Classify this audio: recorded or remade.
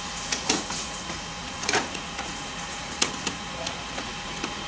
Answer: remade